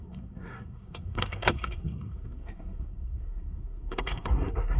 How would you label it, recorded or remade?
remade